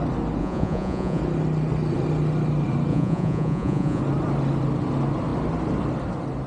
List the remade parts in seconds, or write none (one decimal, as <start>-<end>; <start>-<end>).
0.4-1.2; 2.9-4.0